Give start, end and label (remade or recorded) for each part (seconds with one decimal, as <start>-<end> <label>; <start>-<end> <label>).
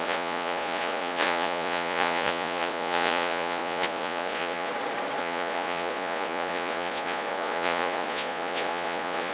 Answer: 0.0-4.7 remade; 4.7-5.2 recorded; 5.2-9.3 remade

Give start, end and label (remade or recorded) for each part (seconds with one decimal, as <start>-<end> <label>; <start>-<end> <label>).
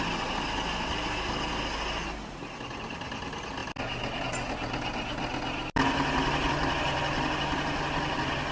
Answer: 0.0-8.5 recorded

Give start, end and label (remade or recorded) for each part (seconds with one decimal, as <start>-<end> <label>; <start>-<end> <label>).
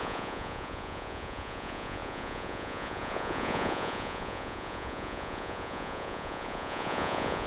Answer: 0.0-7.5 remade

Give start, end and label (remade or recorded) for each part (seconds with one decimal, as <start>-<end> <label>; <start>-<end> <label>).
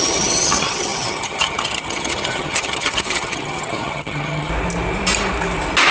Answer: 0.0-4.5 remade; 4.5-5.9 recorded